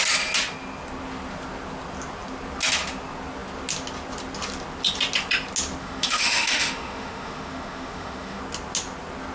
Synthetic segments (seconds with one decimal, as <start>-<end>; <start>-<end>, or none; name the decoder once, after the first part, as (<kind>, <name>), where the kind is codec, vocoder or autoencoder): 5.8-8.4 (autoencoder, DAC-VAE)